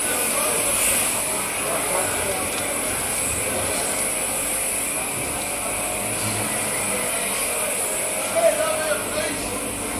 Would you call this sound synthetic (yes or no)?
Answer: no